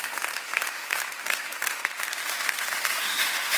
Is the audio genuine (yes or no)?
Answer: no